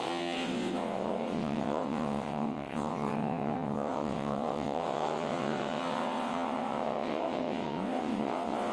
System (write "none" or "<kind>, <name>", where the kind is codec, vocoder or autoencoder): vocoder, WaveNeXt